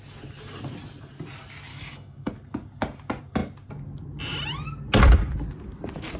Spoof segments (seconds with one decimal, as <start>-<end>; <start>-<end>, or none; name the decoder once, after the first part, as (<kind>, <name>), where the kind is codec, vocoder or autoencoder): 1.7-2.3 (codec, DAC)